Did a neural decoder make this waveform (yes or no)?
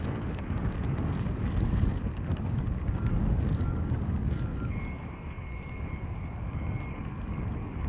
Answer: yes